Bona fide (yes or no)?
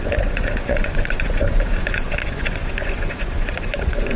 no